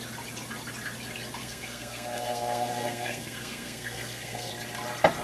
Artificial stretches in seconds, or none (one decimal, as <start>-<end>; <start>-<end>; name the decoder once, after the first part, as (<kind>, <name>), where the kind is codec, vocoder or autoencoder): 1.4-4.5 (codec, SNAC)